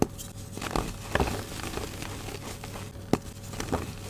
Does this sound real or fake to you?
real